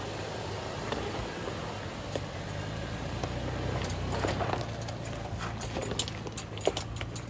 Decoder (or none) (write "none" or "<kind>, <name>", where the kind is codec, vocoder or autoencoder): none